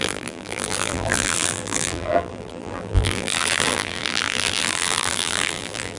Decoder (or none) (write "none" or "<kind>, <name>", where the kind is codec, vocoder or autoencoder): vocoder, BigVGAN v2